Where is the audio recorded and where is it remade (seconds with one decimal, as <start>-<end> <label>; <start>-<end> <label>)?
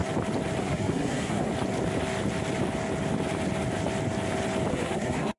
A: 0.0-0.6 recorded; 0.6-1.5 remade; 1.5-4.7 recorded; 4.7-5.4 remade